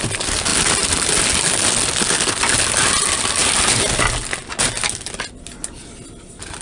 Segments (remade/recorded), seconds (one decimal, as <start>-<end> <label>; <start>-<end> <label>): 0.0-6.6 recorded